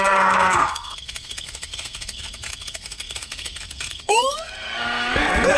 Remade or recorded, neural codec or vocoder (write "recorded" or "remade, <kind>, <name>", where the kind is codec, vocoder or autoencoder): remade, codec, SNAC